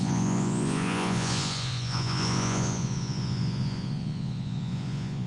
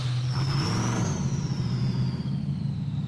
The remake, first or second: first